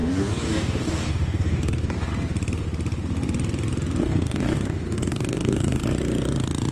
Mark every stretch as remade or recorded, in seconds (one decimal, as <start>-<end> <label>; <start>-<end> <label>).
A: 0.0-2.1 remade; 2.1-4.0 recorded; 4.0-5.8 remade; 5.8-6.7 recorded